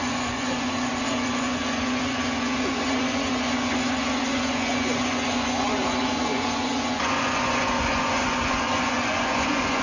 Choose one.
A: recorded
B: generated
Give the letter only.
B